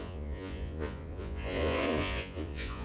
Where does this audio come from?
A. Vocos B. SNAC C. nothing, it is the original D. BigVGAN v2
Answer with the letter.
A